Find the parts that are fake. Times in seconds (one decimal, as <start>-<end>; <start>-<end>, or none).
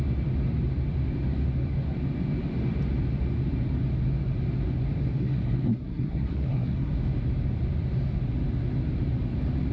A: 5.2-6.9